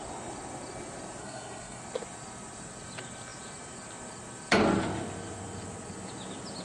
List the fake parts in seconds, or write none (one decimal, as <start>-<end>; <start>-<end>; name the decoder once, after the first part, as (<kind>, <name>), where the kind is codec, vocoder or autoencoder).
1.2-1.8 (codec, SNAC)